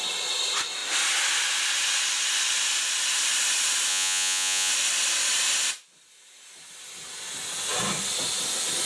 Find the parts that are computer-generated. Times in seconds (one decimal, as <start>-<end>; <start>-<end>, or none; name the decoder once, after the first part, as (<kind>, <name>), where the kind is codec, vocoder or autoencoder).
3.9-4.7 (vocoder, Vocos)

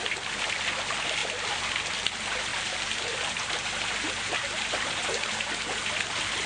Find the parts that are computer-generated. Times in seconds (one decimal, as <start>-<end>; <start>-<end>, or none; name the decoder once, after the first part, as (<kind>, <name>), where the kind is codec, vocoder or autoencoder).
2.5-5.5 (vocoder, BigVGAN v2)

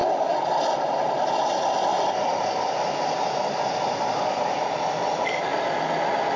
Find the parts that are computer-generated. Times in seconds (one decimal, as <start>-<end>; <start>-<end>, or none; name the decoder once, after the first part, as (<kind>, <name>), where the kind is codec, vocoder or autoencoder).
none

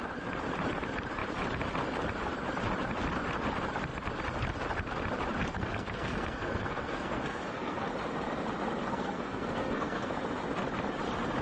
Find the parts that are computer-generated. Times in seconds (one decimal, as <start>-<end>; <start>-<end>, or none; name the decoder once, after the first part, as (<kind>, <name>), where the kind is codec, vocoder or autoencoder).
5.5-7.9 (codec, SNAC); 8.9-10.1

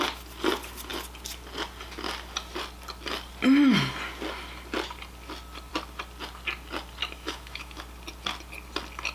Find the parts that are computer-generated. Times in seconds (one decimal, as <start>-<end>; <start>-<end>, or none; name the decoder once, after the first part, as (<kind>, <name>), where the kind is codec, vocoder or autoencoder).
7.0-7.8 (autoencoder, DAC-VAE)